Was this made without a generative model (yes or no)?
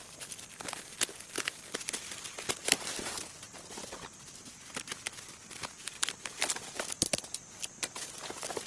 yes